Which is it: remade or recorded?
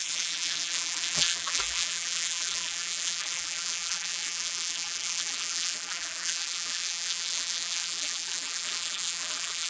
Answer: remade